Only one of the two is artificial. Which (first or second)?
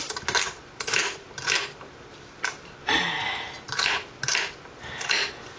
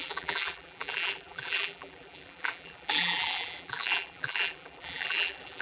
second